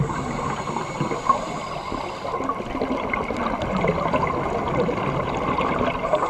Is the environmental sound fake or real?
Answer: real